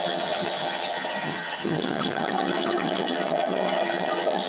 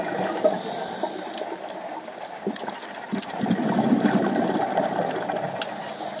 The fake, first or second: first